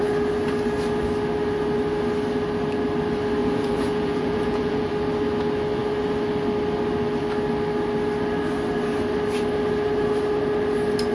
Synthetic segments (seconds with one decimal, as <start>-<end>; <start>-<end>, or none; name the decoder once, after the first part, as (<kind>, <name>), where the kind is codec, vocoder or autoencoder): 3.4-4.9 (vocoder, Vocos)